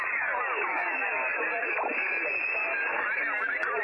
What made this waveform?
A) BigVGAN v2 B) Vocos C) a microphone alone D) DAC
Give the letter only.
C